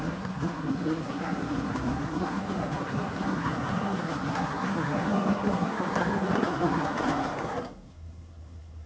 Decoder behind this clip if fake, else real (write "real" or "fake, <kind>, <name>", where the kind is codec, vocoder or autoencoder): fake, codec, SNAC